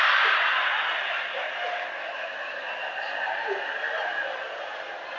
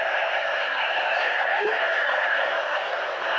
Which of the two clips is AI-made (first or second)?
second